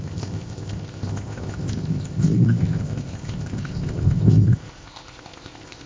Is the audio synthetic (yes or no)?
yes